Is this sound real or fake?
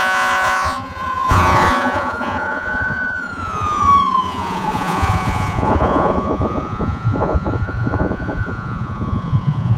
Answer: fake